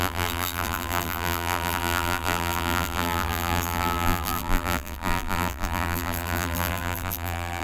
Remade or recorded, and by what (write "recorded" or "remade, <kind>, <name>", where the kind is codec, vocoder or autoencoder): remade, vocoder, BigVGAN v2